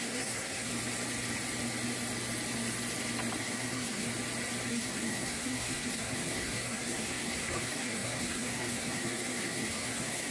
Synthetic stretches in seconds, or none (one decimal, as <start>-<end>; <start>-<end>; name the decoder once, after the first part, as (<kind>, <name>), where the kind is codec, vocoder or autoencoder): 0.0-0.7 (codec, SNAC); 3.4-4.1; 4.7-10.3